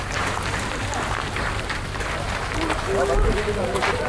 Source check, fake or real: fake